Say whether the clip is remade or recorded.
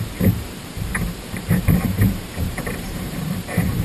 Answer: remade